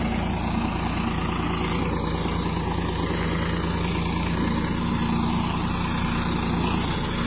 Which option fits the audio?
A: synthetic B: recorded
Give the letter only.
B